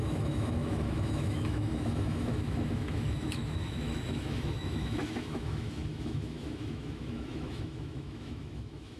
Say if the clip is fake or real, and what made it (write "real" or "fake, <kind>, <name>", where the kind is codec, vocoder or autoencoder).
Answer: fake, autoencoder, DAC-VAE